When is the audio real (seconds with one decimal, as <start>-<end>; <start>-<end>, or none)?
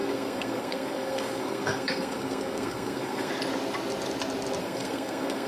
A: 3.3-4.6